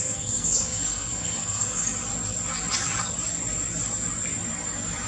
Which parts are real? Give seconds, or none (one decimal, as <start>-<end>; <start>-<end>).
1.8-5.1